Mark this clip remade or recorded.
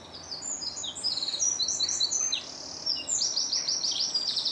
recorded